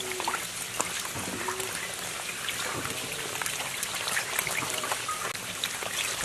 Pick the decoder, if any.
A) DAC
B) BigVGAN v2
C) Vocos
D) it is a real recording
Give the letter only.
D